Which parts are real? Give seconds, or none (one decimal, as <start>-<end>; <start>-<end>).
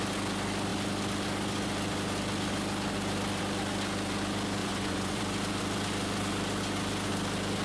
0.0-4.6; 5.2-7.6